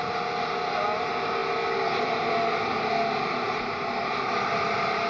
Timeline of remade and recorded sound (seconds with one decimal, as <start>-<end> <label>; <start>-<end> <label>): 0.0-5.1 recorded